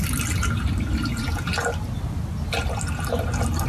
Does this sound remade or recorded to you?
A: recorded